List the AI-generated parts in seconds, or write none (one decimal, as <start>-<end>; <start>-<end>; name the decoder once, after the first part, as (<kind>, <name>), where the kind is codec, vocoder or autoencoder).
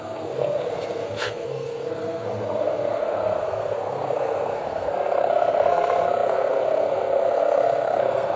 0.0-8.4 (codec, SNAC)